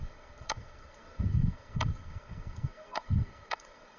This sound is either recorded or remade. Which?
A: remade